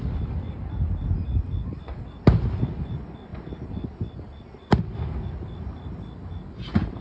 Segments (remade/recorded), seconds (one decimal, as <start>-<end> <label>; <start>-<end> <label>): 0.0-7.0 recorded